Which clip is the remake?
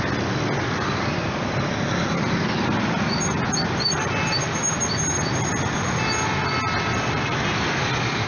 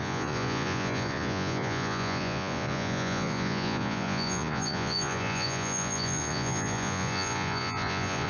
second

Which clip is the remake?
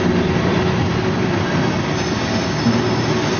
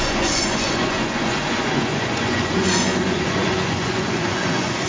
second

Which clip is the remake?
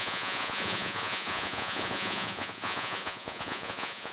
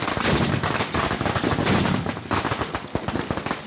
first